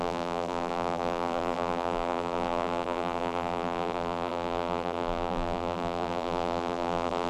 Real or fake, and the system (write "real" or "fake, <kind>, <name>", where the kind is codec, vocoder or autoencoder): fake, vocoder, BigVGAN v2